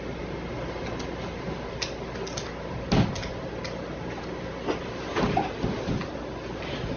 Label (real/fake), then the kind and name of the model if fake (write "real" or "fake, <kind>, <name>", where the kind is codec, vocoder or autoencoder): real